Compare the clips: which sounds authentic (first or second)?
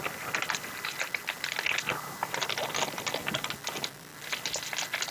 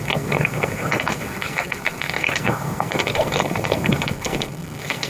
first